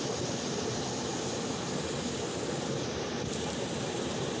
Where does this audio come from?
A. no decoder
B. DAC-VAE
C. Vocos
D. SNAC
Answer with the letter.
A